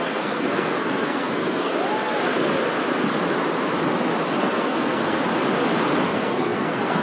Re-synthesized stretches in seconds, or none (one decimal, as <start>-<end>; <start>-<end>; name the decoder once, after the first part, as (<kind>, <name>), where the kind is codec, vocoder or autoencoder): 0.0-1.7 (codec, SNAC); 4.4-5.3; 6.1-7.0